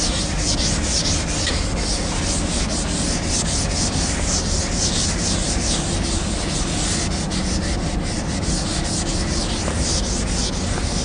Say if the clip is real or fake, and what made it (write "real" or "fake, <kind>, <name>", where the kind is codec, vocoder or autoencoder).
real